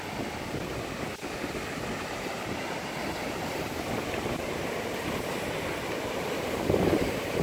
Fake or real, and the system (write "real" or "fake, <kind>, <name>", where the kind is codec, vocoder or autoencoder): real